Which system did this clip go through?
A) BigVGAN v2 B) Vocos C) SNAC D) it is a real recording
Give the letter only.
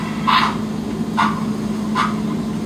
D